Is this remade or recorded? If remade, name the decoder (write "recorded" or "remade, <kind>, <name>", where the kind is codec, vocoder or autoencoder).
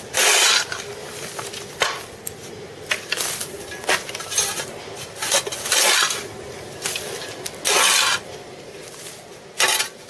recorded